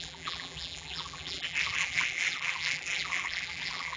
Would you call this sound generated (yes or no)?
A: yes